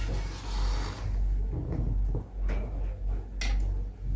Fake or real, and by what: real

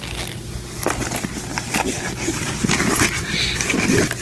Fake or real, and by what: real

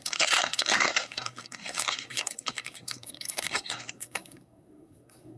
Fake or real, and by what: fake, codec, SNAC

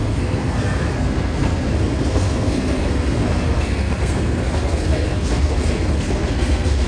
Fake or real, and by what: fake, codec, SNAC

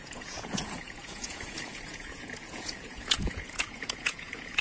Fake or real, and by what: fake, vocoder, Vocos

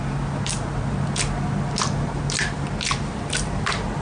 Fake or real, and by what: real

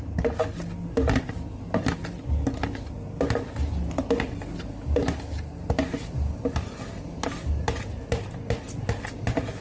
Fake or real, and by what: real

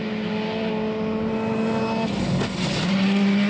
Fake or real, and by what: real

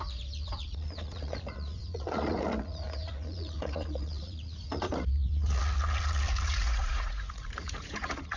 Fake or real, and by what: fake, vocoder, Vocos